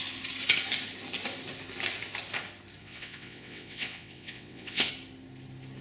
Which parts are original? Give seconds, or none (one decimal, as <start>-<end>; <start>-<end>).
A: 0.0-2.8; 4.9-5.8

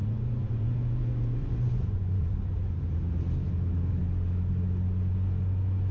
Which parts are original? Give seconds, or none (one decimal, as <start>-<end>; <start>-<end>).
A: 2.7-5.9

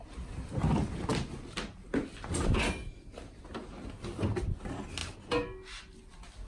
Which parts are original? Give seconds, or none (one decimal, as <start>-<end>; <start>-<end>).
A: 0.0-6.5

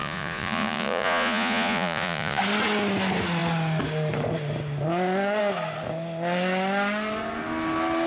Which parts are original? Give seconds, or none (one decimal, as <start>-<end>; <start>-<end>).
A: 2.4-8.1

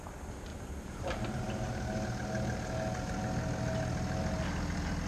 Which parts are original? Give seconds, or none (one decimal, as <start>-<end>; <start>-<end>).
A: 0.0-0.5; 1.7-5.1

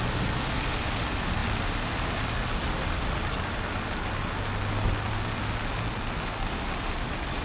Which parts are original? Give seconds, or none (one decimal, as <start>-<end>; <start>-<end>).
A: 0.0-7.4